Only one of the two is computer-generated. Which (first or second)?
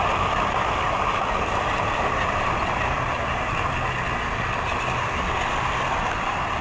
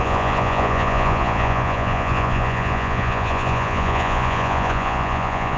second